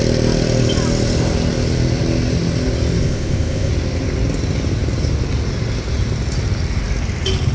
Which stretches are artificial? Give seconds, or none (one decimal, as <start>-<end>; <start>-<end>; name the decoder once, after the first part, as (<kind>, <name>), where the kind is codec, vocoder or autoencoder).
3.0-3.7 (codec, ZipCodec)